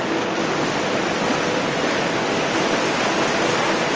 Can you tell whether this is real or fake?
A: real